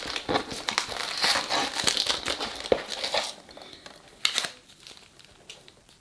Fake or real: real